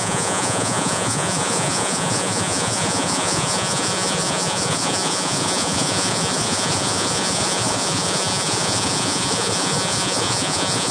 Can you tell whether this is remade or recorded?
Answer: remade